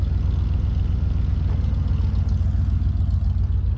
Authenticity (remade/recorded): recorded